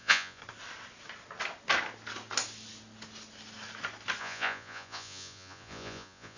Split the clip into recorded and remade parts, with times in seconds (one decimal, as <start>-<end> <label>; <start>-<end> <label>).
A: 0.0-0.4 remade; 0.4-4.2 recorded; 4.2-6.4 remade